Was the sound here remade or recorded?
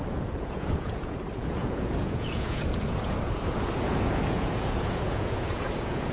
remade